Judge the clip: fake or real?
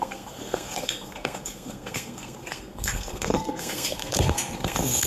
fake